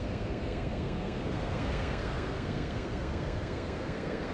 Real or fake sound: fake